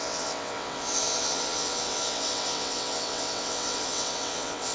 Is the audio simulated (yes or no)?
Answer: yes